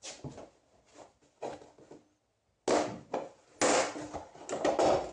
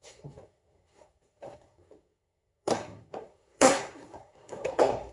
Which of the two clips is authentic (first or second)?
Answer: first